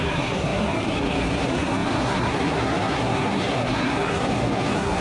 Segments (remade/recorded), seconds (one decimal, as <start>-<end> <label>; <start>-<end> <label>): 0.0-5.0 remade

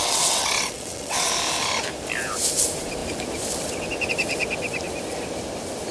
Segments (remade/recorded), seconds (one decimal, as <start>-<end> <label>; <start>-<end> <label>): 0.0-1.3 remade; 1.3-5.9 recorded

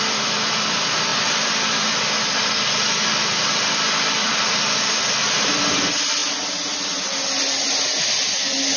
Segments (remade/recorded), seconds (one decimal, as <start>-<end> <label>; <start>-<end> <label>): 0.0-8.8 recorded

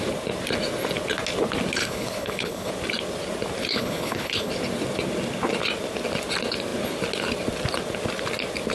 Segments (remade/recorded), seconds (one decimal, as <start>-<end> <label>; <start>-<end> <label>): 0.0-1.8 recorded; 1.8-2.7 remade; 2.7-3.7 recorded; 3.7-4.5 remade; 4.5-8.7 recorded